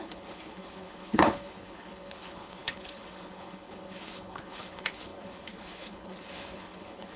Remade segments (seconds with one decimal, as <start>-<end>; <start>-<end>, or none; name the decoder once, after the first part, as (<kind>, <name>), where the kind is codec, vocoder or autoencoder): 0.0-7.2 (codec, HILCodec)